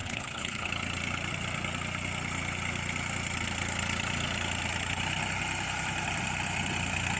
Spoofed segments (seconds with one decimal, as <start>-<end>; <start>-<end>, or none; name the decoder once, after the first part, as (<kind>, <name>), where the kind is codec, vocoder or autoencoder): 0.0-0.7 (codec, HILCodec)